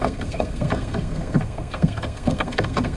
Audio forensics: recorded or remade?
remade